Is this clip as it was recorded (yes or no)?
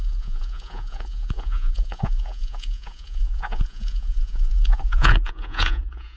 no